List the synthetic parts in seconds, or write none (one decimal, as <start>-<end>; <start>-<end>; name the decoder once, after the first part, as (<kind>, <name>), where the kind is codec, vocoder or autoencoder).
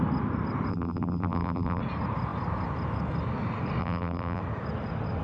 0.7-1.8 (vocoder, BigVGAN v2); 3.8-4.4